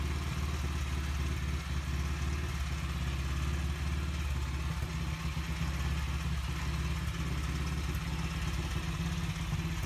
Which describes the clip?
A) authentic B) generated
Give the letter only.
A